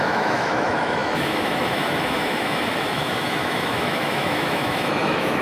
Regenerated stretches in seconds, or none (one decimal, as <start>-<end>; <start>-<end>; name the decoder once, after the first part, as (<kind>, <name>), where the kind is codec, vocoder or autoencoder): 0.0-5.4 (autoencoder, DAC-VAE)